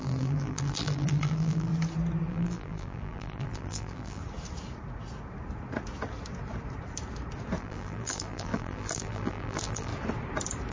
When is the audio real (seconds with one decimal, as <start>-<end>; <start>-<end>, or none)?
1.7-2.3; 4.2-7.6; 9.9-10.7